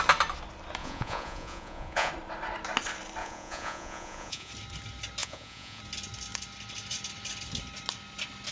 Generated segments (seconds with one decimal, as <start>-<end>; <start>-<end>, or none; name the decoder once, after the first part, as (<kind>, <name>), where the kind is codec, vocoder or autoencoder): 0.8-2.1 (vocoder, Vocos); 3.2-4.5; 5.2-5.8